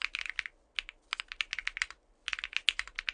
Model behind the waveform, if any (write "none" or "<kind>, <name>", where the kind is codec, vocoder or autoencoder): none